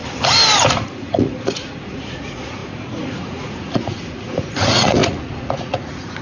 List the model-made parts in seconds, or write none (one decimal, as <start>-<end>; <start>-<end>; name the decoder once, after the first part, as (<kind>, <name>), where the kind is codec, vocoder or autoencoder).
0.7-6.2 (vocoder, Vocos)